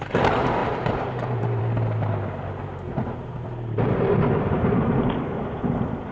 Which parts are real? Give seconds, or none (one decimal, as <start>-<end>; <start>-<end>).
0.0-0.6; 1.6-2.9; 5.0-6.1